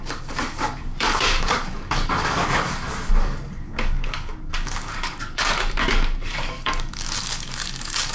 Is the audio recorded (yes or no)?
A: no